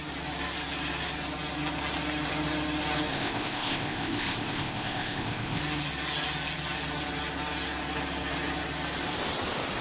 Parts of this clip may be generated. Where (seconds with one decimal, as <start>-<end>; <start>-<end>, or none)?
3.1-5.6